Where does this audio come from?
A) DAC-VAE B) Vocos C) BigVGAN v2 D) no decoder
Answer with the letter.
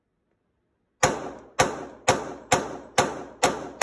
D